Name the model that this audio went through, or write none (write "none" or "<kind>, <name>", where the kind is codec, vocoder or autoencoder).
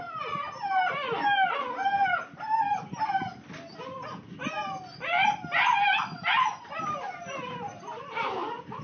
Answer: none